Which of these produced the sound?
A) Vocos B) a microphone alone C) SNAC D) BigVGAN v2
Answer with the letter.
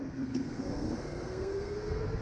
C